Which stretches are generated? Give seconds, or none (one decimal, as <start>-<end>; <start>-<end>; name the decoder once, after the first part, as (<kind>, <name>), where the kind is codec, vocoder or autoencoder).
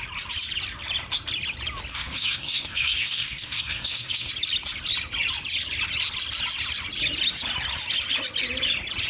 1.9-4.3 (codec, SNAC)